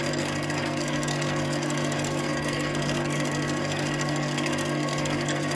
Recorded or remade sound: remade